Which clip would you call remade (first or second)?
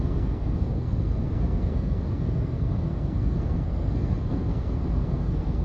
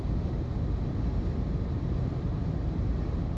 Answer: first